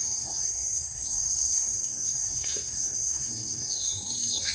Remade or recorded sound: remade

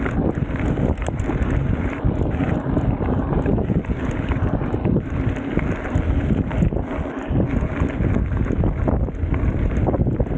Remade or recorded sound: recorded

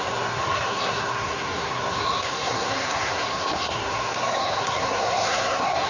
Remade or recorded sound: remade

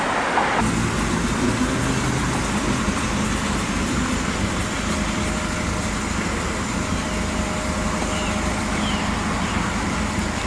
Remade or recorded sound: recorded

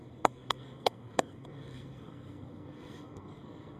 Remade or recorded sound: remade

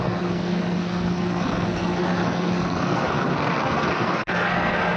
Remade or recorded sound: remade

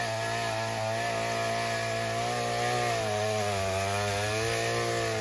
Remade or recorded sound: recorded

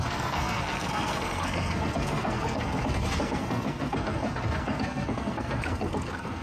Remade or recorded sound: remade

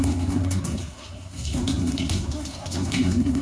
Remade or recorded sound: remade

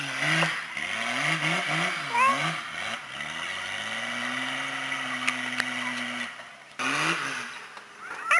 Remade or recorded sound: recorded